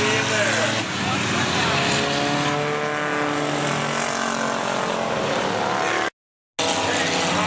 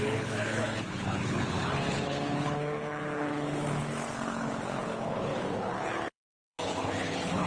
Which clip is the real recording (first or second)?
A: first